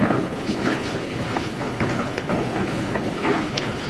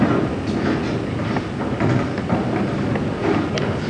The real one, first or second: second